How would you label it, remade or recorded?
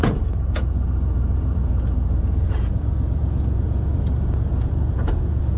remade